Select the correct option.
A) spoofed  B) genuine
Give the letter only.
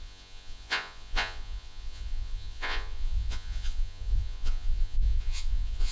A